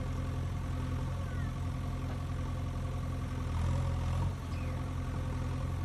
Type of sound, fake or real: real